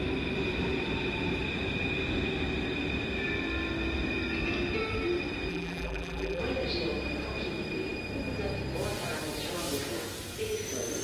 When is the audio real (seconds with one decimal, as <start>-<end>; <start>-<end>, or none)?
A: 0.0-5.5; 6.4-11.0